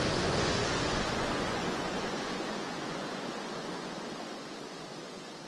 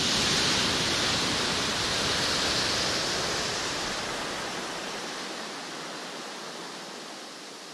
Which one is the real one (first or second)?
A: second